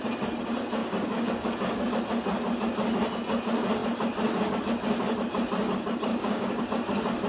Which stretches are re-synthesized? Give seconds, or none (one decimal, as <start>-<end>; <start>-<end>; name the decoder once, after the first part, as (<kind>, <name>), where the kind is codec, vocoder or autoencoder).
0.8-1.9 (codec, DAC); 6.1-6.6